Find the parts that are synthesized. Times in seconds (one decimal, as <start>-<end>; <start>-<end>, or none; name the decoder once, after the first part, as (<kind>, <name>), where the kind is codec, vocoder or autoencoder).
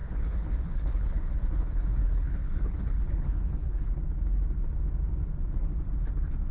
0.0-3.9 (codec, HILCodec)